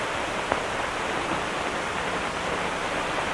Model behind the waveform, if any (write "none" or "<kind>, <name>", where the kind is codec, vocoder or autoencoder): none